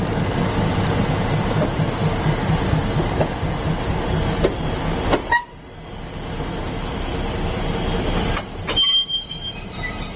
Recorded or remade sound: recorded